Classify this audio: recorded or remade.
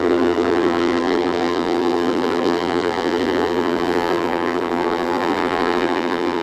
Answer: remade